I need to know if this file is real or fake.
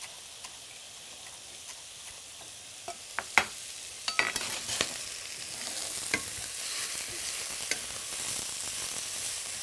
real